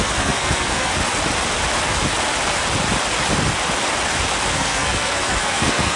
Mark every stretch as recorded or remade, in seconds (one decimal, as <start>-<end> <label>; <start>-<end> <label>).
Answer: 0.0-0.9 remade; 0.9-4.5 recorded; 4.5-6.0 remade